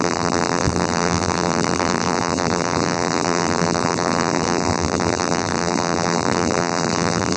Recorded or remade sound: remade